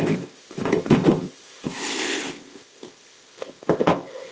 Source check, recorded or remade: remade